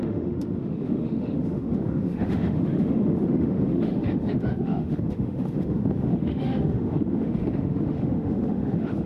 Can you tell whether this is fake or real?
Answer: fake